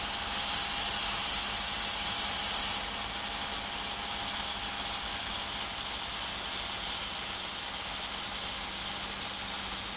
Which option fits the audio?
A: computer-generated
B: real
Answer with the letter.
B